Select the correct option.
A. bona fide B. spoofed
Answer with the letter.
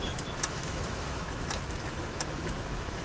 B